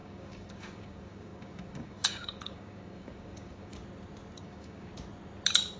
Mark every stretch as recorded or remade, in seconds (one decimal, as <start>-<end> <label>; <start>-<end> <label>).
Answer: 0.0-3.7 remade; 3.7-4.4 recorded; 4.4-4.9 remade; 4.9-5.8 recorded